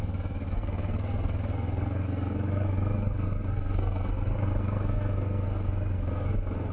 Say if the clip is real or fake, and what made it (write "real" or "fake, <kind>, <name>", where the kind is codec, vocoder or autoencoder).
fake, codec, SNAC